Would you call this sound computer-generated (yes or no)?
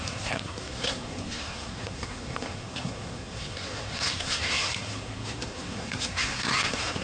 yes